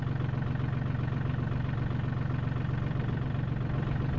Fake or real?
real